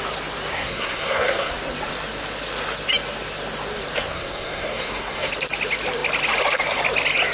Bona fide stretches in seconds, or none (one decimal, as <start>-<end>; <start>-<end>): 0.0-0.5; 1.5-4.1; 5.3-7.3